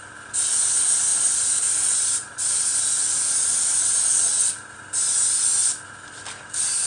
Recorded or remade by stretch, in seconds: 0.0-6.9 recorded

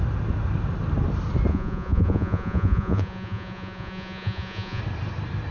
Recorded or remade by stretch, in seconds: 0.0-1.5 recorded; 1.5-4.8 remade; 4.8-5.5 recorded

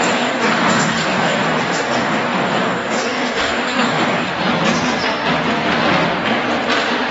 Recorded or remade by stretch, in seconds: 0.0-4.3 remade; 4.3-7.1 recorded

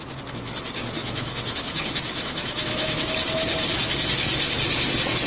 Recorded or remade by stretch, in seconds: 0.0-1.0 recorded; 1.0-3.1 remade; 3.1-5.3 recorded

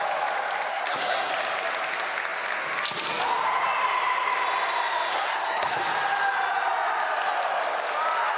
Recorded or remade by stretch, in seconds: 0.0-0.7 recorded; 0.7-1.3 remade; 1.3-5.1 recorded; 5.1-5.8 remade; 5.8-8.4 recorded

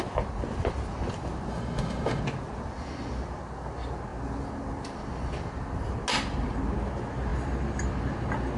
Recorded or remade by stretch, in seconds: 0.0-1.5 recorded; 1.5-2.2 remade; 2.2-8.6 recorded